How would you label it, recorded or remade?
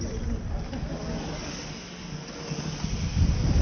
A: recorded